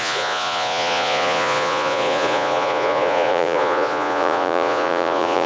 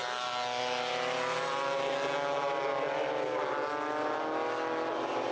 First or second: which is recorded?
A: second